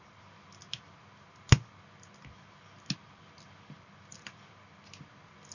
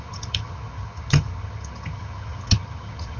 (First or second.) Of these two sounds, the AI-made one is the second